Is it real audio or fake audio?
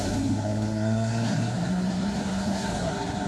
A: fake